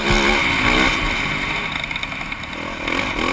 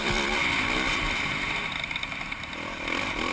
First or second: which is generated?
second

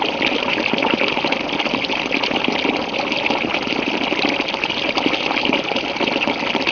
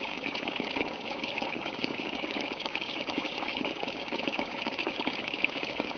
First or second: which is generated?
second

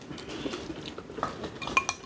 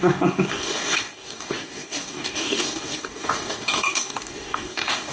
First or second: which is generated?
second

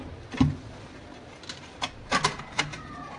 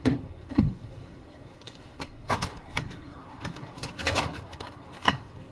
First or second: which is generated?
second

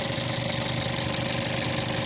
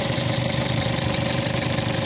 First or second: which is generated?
second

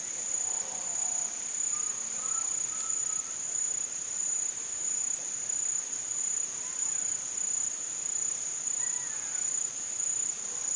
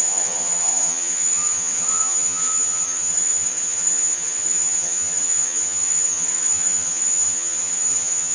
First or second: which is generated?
second